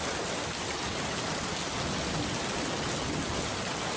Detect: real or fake real